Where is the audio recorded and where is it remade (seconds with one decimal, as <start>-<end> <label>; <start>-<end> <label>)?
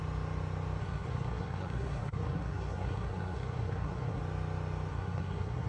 0.0-0.8 recorded; 0.8-4.2 remade; 4.2-4.9 recorded; 4.9-5.7 remade